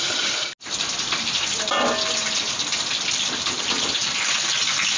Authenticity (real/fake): real